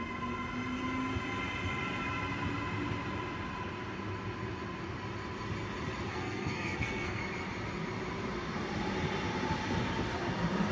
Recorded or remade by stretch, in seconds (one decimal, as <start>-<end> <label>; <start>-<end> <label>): 0.0-6.1 recorded; 6.1-7.2 remade; 7.2-10.7 recorded